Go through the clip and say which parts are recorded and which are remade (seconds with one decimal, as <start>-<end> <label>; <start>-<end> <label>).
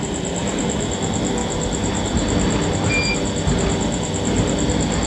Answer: 0.0-5.1 recorded